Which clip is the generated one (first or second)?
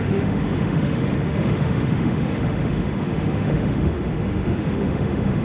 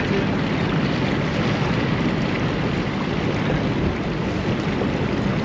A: first